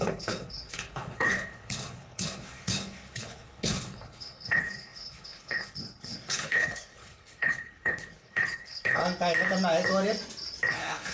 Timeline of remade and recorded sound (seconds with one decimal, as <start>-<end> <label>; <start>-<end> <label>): 0.0-9.0 remade; 9.0-10.7 recorded; 10.7-11.1 remade